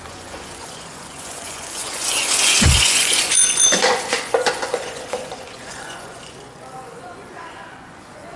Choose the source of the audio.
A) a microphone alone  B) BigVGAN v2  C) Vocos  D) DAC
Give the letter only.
C